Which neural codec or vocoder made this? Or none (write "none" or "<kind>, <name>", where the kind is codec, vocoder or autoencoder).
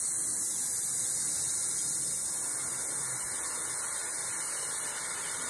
none